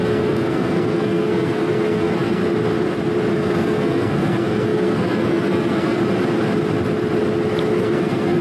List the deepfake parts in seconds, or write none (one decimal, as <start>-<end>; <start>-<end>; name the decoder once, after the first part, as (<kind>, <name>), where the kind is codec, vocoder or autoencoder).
0.0-2.4 (codec, SNAC); 3.3-6.0; 7.8-8.4